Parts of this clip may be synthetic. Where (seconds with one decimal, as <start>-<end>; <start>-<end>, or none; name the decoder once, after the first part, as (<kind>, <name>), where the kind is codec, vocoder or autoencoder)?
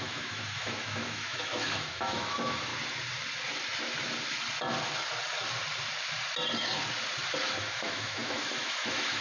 0.0-2.7 (autoencoder, DAC-VAE); 7.6-9.2